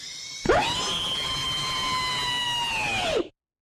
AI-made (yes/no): no